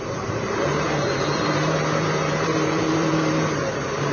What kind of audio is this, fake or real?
fake